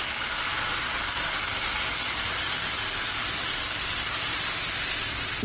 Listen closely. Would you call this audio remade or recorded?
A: remade